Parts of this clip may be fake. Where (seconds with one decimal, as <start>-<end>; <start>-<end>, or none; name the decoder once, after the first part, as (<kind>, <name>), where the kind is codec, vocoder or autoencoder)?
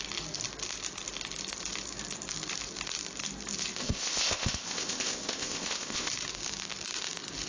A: 3.8-6.1 (codec, ZipCodec)